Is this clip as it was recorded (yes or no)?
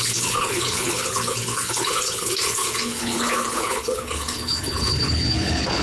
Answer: no